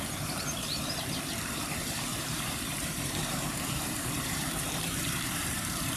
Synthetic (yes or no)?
yes